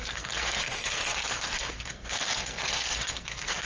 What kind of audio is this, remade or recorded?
remade